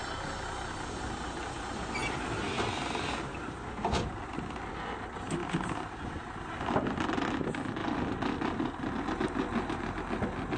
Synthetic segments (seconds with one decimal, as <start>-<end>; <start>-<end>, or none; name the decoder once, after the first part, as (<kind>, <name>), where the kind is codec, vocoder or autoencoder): none